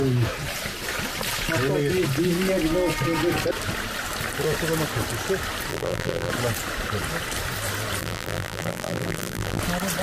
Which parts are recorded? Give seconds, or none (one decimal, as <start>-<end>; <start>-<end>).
0.0-5.7; 6.3-8.0; 9.6-10.0